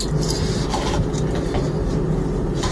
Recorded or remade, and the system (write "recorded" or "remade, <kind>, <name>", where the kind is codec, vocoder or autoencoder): recorded